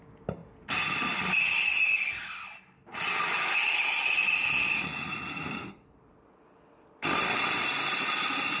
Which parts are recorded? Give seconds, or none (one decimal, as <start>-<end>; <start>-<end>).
0.0-8.6